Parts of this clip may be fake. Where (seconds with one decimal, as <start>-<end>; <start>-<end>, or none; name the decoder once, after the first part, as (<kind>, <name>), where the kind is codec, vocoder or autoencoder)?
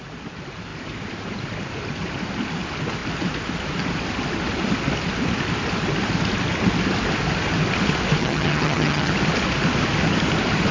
8.2-9.1 (vocoder, HiFi-GAN)